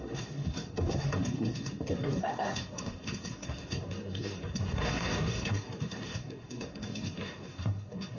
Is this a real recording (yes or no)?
no